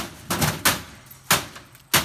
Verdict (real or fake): real